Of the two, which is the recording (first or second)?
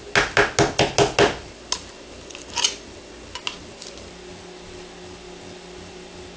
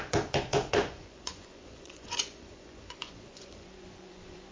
first